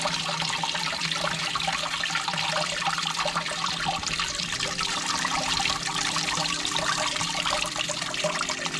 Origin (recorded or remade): recorded